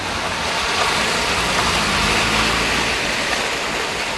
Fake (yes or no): no